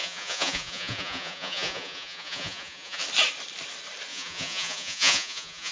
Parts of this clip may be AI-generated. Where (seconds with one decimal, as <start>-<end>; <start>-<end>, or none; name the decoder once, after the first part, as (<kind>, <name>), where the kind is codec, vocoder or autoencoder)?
0.0-3.0 (vocoder, Vocos); 4.1-5.7